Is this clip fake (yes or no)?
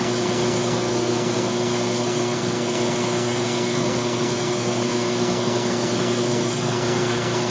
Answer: yes